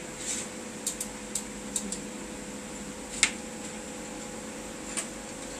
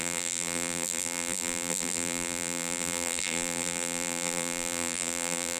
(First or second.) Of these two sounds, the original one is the first